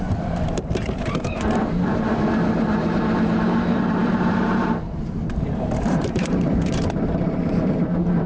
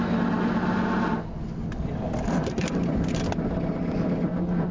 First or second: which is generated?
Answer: first